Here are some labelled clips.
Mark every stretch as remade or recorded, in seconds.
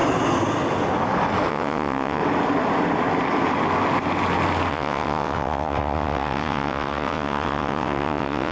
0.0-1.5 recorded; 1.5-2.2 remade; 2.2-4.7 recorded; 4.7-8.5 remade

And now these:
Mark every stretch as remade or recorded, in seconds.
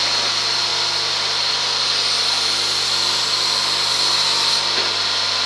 0.0-5.5 recorded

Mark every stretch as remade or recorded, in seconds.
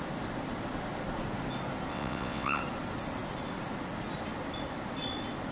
0.0-1.9 recorded; 1.9-2.6 remade; 2.6-5.5 recorded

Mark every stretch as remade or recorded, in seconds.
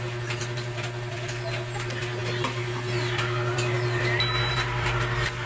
0.0-5.5 recorded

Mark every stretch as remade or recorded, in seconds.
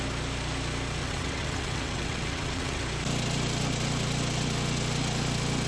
0.0-1.0 recorded; 1.0-2.8 remade; 2.8-5.7 recorded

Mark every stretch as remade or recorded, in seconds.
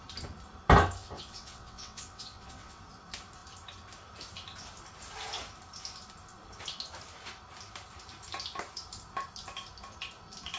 0.0-1.0 recorded; 1.0-2.8 remade; 2.8-10.6 recorded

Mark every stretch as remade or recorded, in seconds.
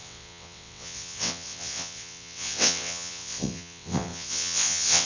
0.0-5.1 remade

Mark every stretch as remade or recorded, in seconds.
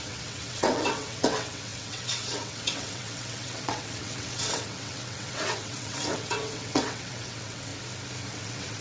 0.0-7.7 remade; 7.7-8.3 recorded; 8.3-8.8 remade